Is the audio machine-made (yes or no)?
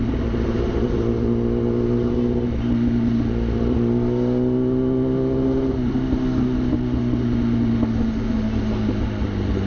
no